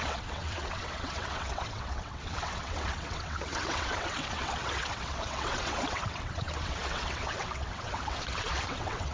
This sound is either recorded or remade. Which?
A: remade